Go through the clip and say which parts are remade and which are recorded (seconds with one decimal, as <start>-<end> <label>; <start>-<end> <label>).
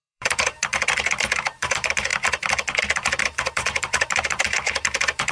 0.0-0.7 remade; 0.7-1.2 recorded; 1.2-2.1 remade; 2.1-3.2 recorded; 3.2-5.3 remade